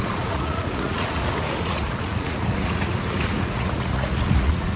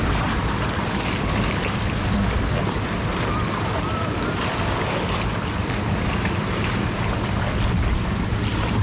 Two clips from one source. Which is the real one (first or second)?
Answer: second